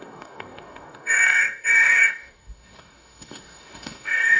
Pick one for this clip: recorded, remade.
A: remade